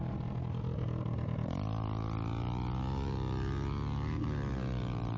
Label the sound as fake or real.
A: real